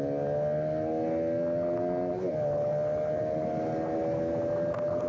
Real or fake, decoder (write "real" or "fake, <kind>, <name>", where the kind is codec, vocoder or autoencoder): real